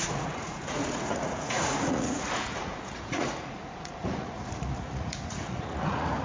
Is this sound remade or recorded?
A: remade